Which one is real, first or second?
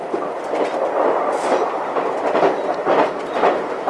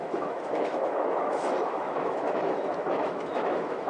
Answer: first